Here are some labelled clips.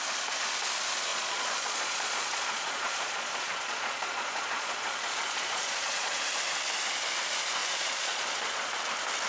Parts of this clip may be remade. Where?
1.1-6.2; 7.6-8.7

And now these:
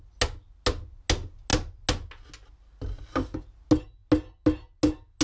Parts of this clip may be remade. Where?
none

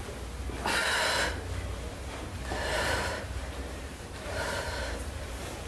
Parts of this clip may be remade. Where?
1.9-5.3

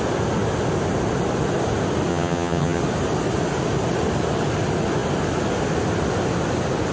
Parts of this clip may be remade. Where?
2.1-2.8

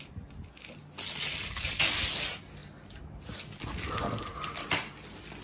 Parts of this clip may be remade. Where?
none